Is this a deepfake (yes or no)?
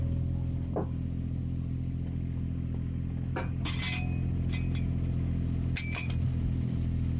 no